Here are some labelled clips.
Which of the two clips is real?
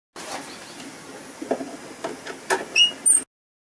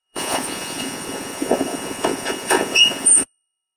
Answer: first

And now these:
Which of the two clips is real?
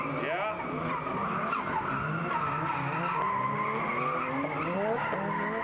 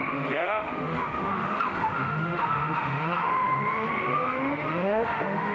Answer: first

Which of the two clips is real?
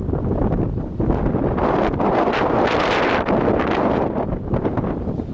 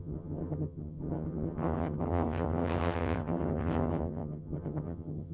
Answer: first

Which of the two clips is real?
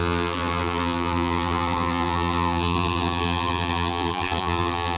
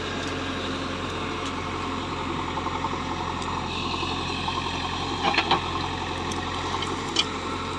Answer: second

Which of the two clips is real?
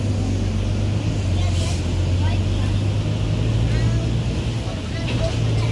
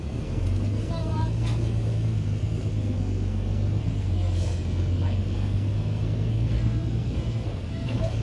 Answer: first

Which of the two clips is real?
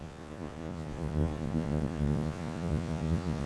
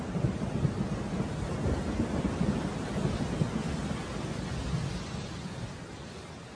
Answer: second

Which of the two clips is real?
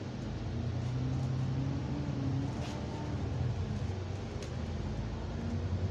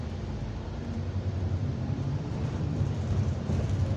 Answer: first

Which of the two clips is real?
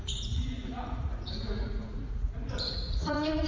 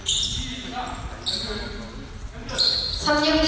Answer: second